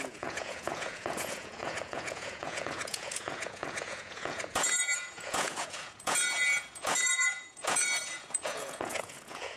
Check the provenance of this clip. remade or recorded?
remade